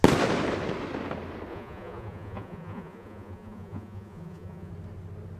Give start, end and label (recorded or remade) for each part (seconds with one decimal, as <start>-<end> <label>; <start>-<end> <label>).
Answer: 0.0-1.5 recorded; 1.5-4.7 remade; 4.7-5.4 recorded